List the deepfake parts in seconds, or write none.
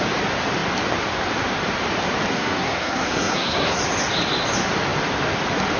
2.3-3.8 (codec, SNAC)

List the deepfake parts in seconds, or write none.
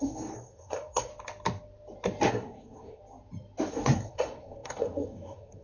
0.0-1.1 (codec, SNAC); 2.3-3.0; 3.7-5.6